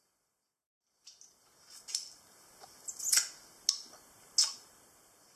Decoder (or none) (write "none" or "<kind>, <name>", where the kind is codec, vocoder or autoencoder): none